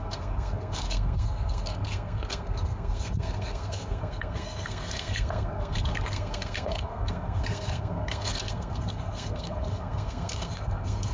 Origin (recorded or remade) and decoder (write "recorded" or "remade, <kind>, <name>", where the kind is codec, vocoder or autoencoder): remade, codec, SNAC